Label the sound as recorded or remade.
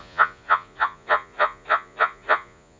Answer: remade